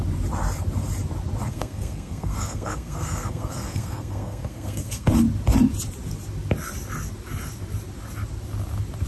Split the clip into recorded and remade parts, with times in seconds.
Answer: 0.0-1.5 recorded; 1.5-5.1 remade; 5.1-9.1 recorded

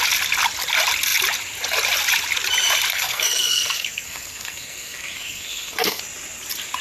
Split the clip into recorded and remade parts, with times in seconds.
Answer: 0.0-2.9 recorded; 2.9-6.0 remade; 6.0-6.8 recorded

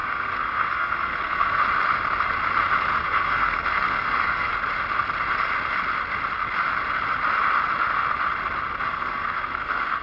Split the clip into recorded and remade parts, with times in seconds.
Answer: 0.0-1.6 remade; 1.6-3.0 recorded; 3.0-4.5 remade; 4.5-8.9 recorded; 8.9-10.0 remade

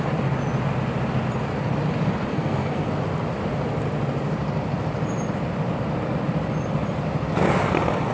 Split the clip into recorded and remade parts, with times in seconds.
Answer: 0.0-2.3 recorded; 2.3-2.9 remade; 2.9-8.1 recorded

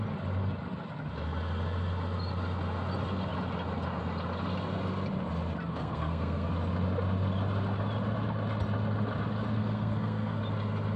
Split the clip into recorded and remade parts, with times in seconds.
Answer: 0.0-5.7 recorded; 5.7-6.5 remade; 6.5-9.6 recorded; 9.6-10.4 remade; 10.4-11.0 recorded

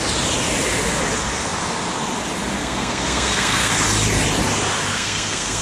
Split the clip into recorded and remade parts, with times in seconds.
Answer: 0.0-2.6 recorded; 2.6-3.7 remade; 3.7-4.9 recorded; 4.9-5.6 remade